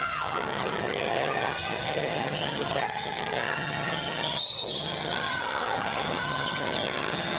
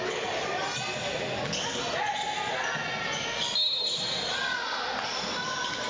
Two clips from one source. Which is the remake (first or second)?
first